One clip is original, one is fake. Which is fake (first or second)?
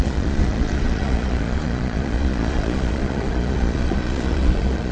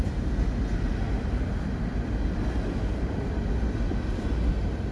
first